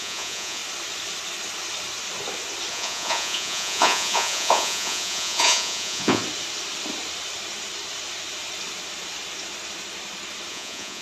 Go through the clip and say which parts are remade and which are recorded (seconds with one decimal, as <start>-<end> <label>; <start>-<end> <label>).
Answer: 0.0-0.6 remade; 0.6-2.7 recorded; 2.7-6.2 remade; 6.2-10.5 recorded; 10.5-11.0 remade